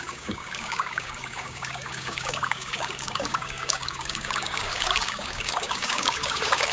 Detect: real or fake fake